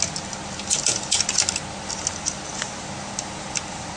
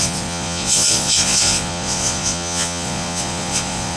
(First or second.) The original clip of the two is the first